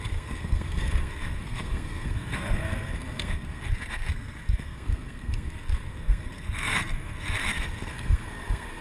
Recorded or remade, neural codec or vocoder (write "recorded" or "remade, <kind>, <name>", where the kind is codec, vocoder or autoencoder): remade, codec, SNAC